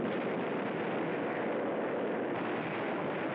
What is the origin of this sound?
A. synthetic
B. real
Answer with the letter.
B